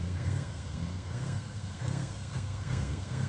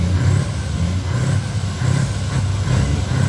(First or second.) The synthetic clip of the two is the first